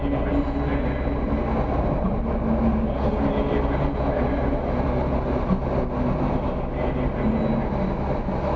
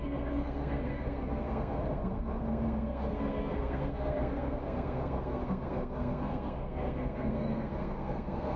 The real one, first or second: first